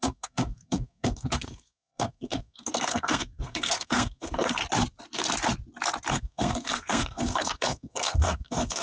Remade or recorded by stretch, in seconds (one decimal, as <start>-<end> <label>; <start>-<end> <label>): 0.0-4.6 remade; 4.6-6.1 recorded; 6.1-8.8 remade